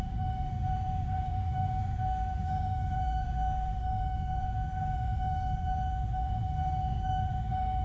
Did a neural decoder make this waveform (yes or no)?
yes